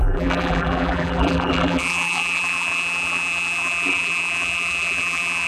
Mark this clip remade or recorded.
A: remade